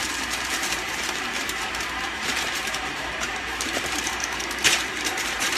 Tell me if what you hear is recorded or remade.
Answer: remade